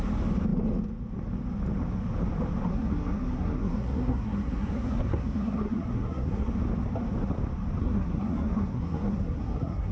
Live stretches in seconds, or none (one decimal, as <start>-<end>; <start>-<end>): 0.0-2.7; 6.5-7.8